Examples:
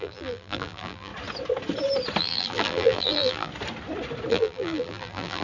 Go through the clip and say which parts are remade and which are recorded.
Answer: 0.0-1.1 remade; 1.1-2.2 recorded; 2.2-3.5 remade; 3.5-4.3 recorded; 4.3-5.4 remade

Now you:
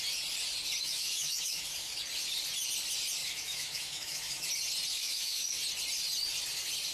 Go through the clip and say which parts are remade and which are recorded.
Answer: 0.0-0.8 recorded; 0.8-1.9 remade; 1.9-3.2 recorded; 3.2-4.5 remade; 4.5-4.9 recorded; 4.9-5.6 remade; 5.6-6.9 recorded

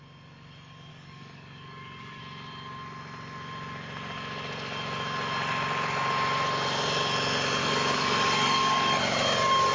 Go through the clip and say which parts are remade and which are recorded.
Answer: 0.0-0.9 recorded; 0.9-2.2 remade; 2.2-7.6 recorded; 7.6-9.0 remade; 9.0-9.7 recorded